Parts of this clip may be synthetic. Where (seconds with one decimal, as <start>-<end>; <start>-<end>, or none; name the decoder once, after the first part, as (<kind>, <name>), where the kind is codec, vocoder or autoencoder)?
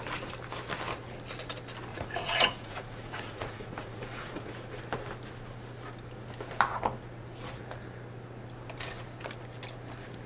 1.9-4.5 (vocoder, Vocos)